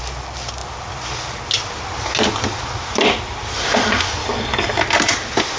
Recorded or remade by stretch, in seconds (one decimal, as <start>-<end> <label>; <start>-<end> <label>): 0.0-4.2 recorded; 4.2-4.8 remade; 4.8-5.6 recorded